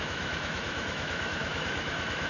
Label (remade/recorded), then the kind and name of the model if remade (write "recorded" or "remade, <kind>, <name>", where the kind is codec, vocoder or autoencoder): remade, autoencoder, DAC-VAE